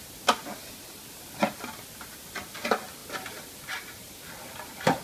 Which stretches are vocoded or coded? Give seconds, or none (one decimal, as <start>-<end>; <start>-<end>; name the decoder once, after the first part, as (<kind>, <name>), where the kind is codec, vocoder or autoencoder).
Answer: none